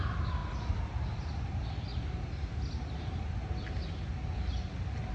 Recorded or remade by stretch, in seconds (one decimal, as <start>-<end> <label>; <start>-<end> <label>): 0.0-5.1 recorded